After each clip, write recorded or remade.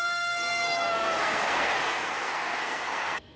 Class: remade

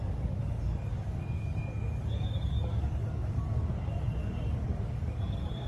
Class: remade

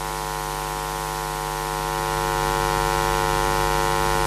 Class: recorded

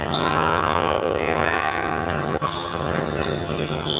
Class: remade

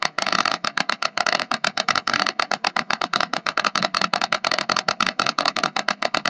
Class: remade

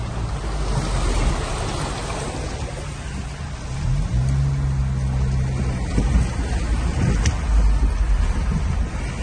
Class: recorded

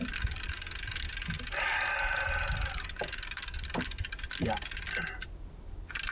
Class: recorded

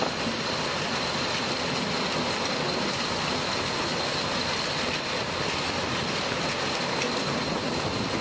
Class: recorded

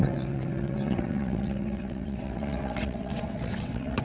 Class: remade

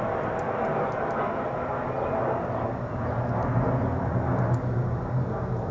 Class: recorded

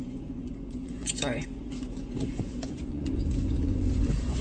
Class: remade